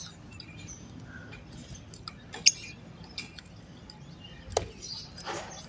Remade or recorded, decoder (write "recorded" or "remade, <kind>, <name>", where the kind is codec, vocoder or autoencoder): recorded